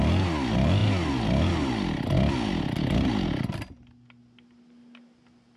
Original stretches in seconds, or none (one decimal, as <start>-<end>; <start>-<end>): 0.0-5.6